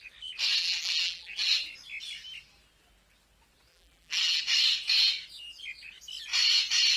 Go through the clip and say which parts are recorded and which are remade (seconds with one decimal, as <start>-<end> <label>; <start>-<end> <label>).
0.0-0.6 recorded; 0.6-1.5 remade; 1.5-3.7 recorded; 3.7-4.4 remade; 4.4-7.0 recorded